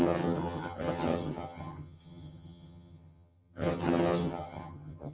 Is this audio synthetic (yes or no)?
yes